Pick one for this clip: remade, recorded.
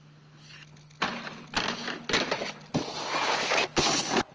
recorded